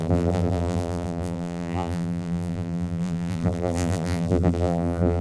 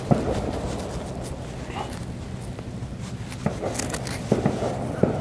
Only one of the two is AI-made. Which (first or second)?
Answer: first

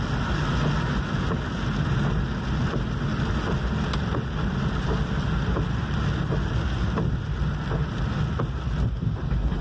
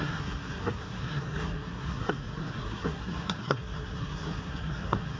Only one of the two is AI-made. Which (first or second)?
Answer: second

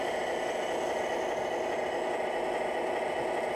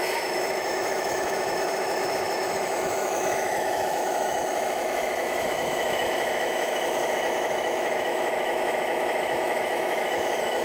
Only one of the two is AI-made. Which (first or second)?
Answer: second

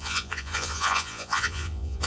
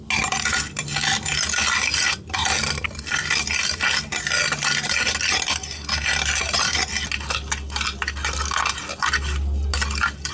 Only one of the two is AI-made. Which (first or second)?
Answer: first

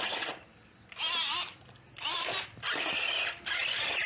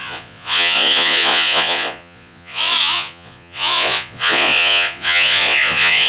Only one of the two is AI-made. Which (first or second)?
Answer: second